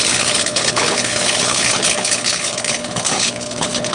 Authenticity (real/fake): fake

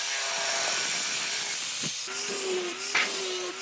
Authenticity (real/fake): real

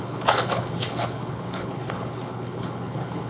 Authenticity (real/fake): fake